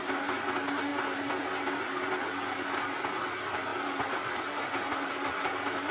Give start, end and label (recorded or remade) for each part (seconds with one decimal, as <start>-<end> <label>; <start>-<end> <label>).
0.0-5.9 recorded